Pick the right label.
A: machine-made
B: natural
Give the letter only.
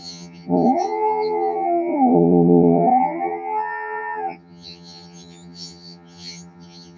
A